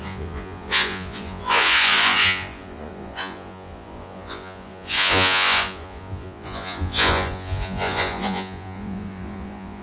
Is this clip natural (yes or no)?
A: no